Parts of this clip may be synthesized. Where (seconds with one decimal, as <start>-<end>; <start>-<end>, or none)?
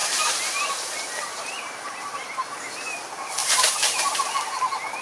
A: 0.0-3.0; 3.4-4.2